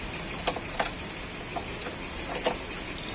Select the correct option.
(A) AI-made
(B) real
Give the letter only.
B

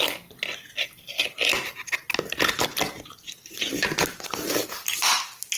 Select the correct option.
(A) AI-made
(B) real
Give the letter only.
B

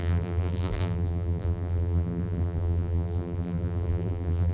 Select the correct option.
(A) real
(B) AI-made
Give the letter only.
B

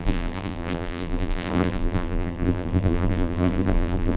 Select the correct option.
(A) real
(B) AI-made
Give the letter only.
B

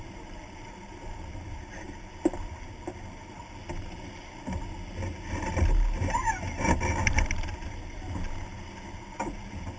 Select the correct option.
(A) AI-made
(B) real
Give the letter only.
B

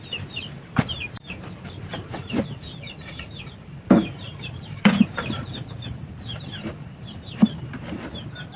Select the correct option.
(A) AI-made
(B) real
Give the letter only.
A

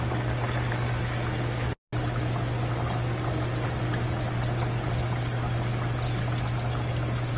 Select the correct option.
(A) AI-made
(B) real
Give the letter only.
B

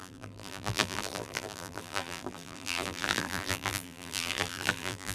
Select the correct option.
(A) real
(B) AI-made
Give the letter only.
B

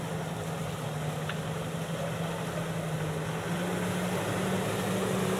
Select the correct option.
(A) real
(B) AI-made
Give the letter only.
A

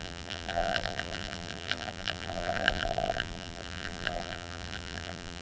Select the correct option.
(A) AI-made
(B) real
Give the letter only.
A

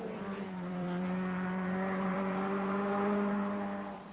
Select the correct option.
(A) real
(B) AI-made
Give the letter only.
B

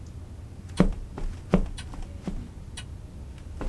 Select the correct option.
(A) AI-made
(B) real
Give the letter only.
B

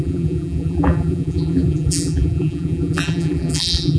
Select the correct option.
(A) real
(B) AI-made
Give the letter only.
B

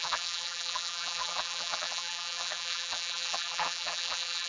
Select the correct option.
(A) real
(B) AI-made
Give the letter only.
B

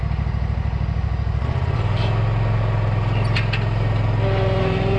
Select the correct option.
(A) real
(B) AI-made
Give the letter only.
A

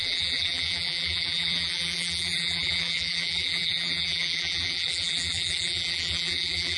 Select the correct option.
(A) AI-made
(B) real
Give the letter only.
A